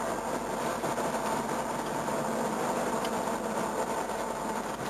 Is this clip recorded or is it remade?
recorded